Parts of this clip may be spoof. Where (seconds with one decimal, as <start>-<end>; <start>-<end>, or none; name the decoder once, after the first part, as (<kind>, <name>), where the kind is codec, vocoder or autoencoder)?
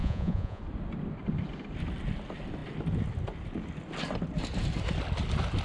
0.0-0.6 (vocoder, Vocos)